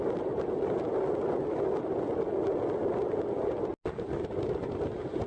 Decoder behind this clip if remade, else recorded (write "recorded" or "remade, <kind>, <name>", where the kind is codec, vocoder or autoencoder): recorded